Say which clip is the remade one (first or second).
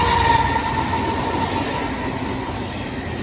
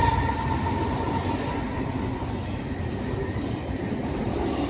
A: second